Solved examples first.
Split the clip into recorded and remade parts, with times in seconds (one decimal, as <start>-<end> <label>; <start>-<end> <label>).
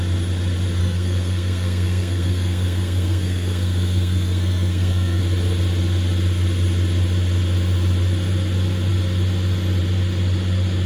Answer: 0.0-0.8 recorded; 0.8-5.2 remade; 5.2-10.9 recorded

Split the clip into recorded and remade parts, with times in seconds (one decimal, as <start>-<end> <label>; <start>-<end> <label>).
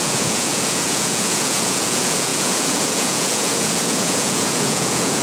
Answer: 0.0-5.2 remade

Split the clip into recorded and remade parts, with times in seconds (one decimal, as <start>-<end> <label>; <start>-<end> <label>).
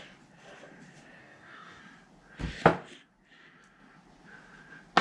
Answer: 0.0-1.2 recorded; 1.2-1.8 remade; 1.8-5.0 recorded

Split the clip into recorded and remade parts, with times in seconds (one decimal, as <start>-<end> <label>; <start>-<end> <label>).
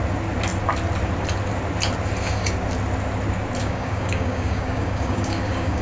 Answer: 0.0-3.6 recorded; 3.6-5.8 remade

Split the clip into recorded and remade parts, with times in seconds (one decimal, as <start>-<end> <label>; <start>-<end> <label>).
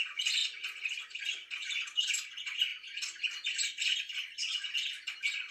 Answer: 0.0-5.5 recorded